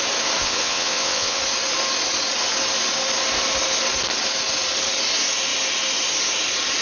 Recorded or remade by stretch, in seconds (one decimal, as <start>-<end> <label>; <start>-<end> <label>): 0.0-0.4 recorded; 0.4-1.4 remade; 1.4-6.8 recorded